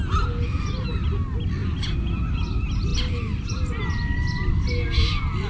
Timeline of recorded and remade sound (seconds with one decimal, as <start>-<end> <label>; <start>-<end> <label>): 0.0-5.5 recorded